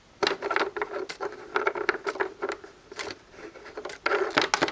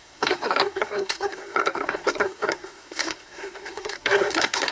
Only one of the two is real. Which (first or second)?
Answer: first